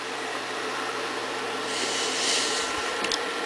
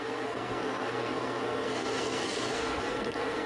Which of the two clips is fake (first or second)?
second